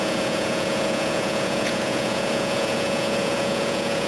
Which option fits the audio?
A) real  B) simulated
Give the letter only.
B